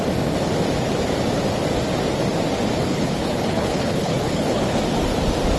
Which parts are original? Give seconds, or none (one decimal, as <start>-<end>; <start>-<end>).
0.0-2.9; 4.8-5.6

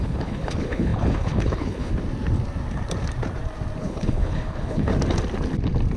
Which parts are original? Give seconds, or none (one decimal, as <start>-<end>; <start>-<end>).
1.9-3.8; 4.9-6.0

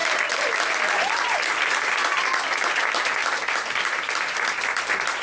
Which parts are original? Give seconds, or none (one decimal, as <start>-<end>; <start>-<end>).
0.0-5.2

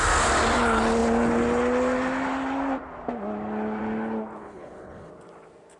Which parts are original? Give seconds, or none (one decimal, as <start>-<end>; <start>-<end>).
0.0-4.4; 5.1-5.8

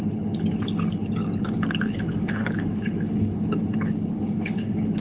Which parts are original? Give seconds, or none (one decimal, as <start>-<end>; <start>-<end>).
none

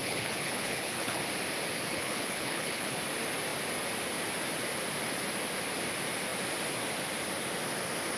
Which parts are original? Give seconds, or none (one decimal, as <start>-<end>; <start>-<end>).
1.2-1.9; 3.0-8.2